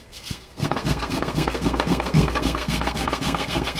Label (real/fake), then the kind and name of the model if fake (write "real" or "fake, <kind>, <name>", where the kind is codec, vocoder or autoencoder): fake, codec, SNAC